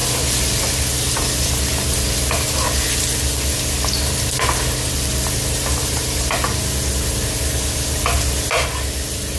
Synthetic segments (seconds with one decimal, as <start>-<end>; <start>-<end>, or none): none